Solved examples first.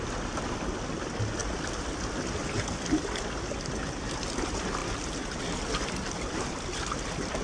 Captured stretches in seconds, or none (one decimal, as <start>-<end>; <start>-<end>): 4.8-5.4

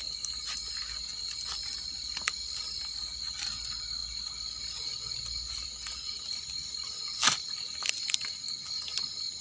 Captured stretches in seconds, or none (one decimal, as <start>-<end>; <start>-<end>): 0.0-1.1; 2.8-4.0; 7.9-9.4

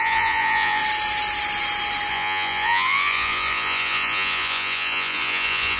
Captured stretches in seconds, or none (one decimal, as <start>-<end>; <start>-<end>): 0.8-2.1